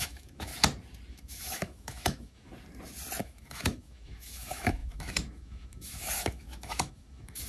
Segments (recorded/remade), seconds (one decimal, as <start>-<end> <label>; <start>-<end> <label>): 0.0-0.5 remade; 0.5-1.1 recorded; 1.1-2.5 remade; 2.5-3.2 recorded; 3.2-7.5 remade